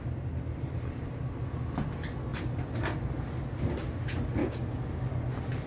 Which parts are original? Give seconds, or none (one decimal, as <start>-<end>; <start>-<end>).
0.0-4.4; 5.0-5.7